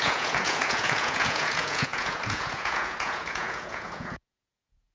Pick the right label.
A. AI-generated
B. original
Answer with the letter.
A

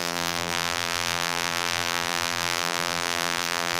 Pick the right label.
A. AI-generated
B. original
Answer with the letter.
A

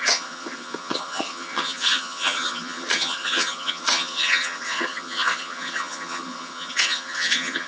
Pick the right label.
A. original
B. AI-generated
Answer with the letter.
B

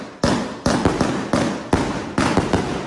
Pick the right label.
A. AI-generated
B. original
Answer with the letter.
B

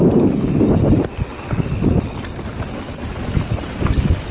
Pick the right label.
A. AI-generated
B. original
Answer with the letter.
B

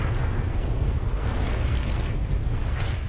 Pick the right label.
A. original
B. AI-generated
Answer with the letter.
B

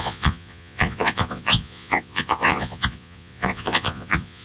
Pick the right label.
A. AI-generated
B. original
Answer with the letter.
A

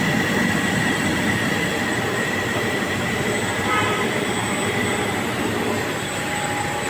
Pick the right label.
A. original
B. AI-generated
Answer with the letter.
B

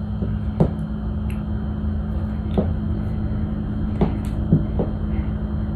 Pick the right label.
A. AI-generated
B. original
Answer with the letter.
B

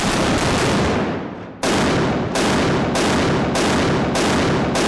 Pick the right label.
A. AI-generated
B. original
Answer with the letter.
B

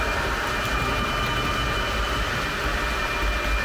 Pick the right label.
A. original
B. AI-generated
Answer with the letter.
A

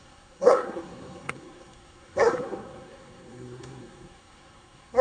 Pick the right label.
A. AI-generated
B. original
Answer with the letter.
A